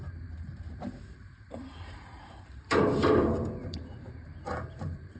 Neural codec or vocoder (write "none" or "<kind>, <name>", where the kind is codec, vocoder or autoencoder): vocoder, BigVGAN v2